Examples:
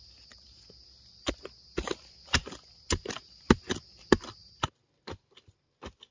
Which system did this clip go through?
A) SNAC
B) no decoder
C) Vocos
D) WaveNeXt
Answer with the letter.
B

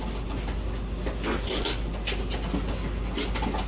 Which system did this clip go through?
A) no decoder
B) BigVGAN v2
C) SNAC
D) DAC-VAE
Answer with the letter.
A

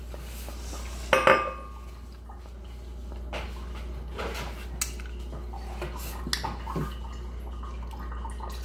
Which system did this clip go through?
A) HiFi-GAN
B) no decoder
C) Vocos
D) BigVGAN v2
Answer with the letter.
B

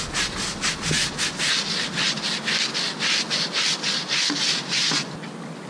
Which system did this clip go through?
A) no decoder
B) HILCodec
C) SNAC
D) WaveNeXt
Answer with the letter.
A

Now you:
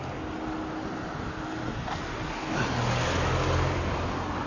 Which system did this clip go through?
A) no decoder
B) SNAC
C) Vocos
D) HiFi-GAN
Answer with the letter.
A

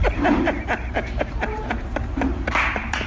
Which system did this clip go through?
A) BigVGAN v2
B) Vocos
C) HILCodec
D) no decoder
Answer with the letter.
A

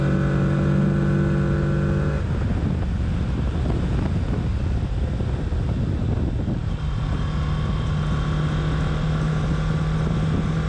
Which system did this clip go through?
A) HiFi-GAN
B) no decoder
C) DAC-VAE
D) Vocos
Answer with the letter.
B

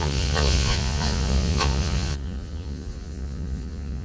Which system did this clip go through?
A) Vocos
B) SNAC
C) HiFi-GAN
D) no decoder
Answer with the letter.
A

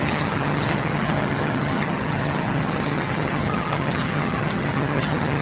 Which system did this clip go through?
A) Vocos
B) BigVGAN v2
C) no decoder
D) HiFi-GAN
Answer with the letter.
D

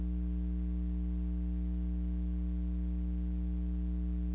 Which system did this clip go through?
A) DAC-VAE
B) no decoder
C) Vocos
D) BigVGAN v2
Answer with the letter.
B